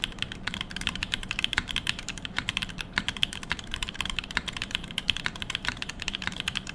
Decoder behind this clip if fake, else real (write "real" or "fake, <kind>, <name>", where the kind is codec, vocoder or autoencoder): fake, vocoder, BigVGAN v2